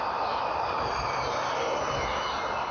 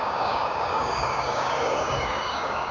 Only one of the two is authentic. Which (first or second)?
first